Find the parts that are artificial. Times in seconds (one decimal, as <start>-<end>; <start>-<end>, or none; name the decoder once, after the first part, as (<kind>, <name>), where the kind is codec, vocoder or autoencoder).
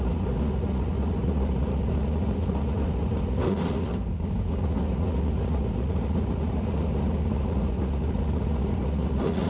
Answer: 0.0-3.9 (vocoder, Vocos); 4.6-9.5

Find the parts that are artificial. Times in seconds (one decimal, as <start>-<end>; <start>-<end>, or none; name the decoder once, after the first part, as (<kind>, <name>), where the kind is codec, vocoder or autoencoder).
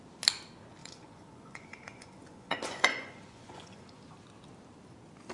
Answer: 0.8-4.0 (vocoder, Vocos)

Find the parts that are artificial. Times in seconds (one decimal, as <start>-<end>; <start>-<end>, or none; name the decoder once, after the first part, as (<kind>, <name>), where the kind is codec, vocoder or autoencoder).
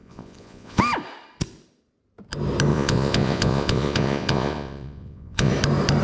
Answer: 0.0-0.8 (vocoder, Vocos); 2.7-5.5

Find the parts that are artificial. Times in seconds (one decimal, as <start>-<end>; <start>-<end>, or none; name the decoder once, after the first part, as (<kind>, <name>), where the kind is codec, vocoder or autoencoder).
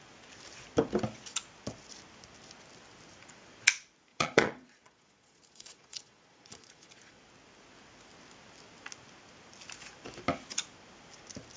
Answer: 4.1-7.2 (vocoder, Vocos)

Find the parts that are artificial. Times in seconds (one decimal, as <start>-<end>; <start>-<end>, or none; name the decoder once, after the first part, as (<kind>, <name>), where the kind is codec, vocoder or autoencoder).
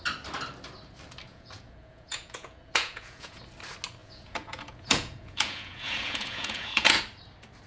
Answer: 1.3-3.4 (vocoder, Vocos); 4.0-7.0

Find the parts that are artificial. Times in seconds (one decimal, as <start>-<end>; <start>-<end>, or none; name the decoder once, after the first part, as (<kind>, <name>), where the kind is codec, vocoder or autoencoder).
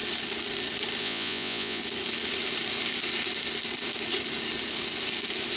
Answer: 1.0-1.8 (vocoder, Vocos)